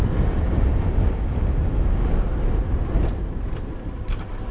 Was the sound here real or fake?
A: real